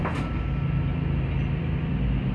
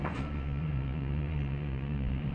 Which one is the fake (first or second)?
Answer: second